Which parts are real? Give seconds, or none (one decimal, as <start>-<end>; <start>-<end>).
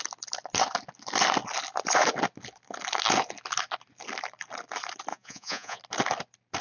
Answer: 0.0-5.1; 5.8-6.6